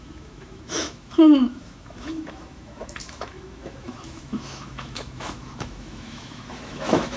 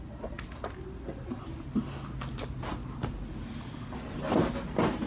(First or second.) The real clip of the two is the second